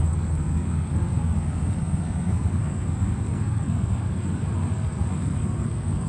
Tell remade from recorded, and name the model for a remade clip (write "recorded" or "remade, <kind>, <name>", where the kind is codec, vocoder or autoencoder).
remade, codec, SNAC